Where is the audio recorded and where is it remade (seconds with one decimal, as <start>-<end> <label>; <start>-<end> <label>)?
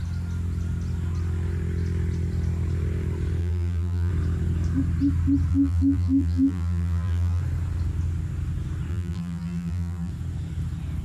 0.0-3.4 recorded; 3.4-4.1 remade; 4.1-5.5 recorded; 5.5-7.4 remade; 7.4-8.9 recorded; 8.9-10.1 remade; 10.1-11.0 recorded